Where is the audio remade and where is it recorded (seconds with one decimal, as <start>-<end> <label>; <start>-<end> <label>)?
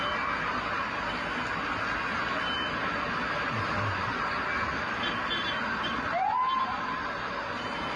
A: 0.0-8.0 recorded